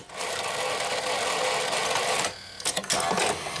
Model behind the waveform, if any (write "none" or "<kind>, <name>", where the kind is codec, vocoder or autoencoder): none